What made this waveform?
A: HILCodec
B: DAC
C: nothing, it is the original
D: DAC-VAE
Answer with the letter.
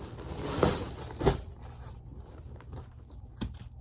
C